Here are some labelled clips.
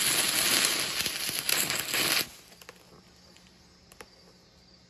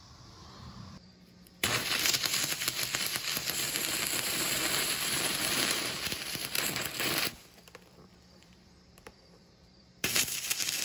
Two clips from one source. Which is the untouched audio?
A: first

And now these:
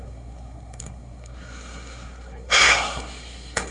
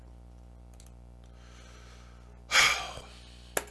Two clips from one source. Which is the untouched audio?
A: second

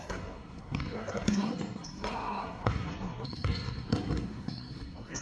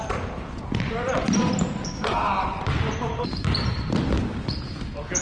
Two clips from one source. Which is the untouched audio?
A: second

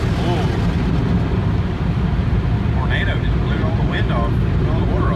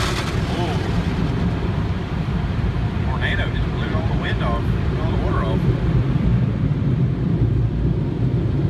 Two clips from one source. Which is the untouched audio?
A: first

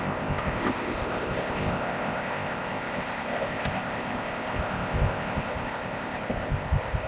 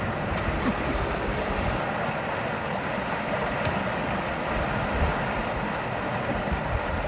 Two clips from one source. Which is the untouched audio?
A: second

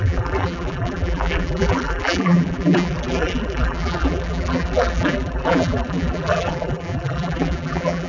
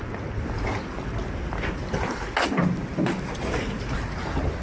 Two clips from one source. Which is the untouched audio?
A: second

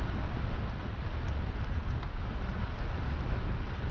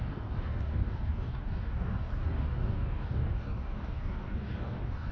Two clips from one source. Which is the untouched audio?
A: first